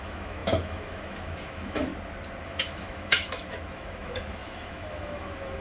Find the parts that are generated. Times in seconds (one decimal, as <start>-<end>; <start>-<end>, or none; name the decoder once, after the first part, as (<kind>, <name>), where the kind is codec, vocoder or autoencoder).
0.0-1.9 (autoencoder, DAC-VAE); 2.4-5.6